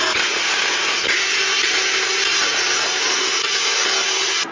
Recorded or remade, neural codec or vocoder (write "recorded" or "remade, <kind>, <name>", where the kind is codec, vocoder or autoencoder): recorded